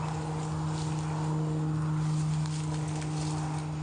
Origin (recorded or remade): recorded